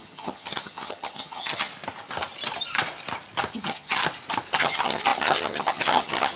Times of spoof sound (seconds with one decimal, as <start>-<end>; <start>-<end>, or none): 0.0-1.7; 3.5-4.0; 4.6-6.4